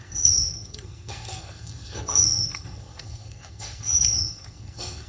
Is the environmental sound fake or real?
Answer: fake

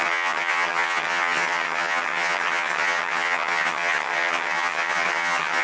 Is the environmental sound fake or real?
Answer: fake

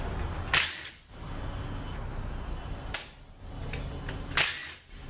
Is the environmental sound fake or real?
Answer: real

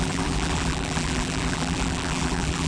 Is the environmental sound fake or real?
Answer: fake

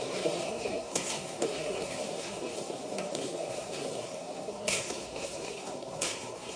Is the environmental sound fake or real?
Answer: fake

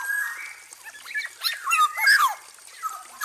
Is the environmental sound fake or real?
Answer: real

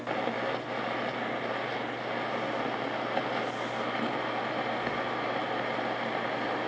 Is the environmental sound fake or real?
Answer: real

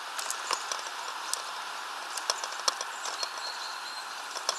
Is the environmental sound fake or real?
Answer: real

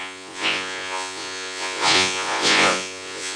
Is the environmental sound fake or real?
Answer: fake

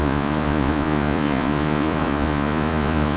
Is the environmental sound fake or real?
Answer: fake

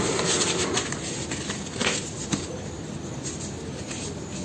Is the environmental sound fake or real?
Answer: real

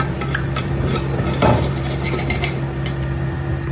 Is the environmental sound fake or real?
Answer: fake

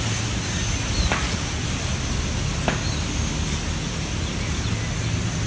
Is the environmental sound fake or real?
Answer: real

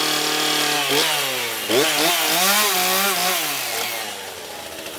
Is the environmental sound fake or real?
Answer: real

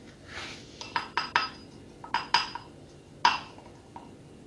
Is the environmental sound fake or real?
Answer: real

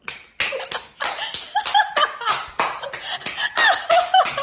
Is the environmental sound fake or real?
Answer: real